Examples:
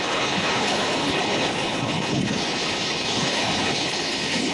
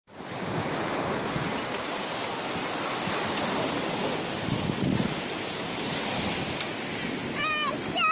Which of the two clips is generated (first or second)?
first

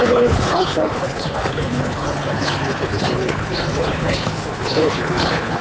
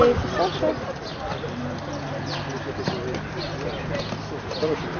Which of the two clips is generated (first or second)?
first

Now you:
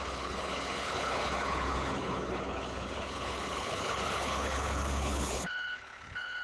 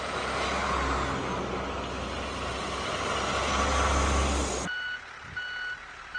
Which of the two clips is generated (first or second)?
first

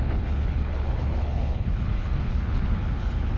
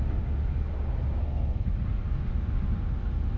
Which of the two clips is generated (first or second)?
first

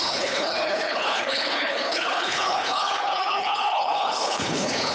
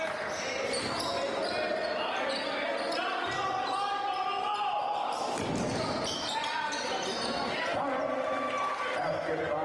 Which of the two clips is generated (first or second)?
first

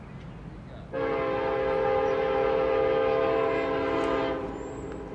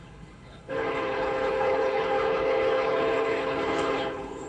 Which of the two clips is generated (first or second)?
second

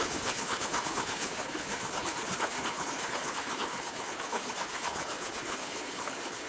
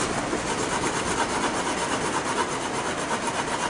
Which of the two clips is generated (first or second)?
first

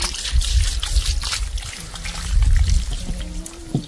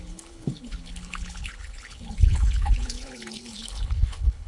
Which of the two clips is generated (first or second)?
second